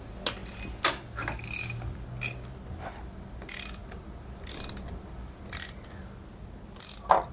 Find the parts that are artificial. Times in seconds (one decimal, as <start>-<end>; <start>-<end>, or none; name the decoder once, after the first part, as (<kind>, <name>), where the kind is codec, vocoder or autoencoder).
none